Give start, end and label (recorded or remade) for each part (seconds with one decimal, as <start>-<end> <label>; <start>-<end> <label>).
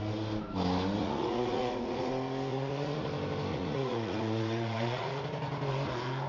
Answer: 0.0-1.0 recorded; 1.0-2.1 remade; 2.1-2.5 recorded; 2.5-3.1 remade; 3.1-3.5 recorded; 3.5-5.2 remade; 5.2-6.3 recorded